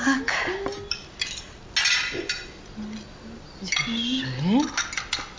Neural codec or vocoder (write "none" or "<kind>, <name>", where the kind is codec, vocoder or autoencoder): none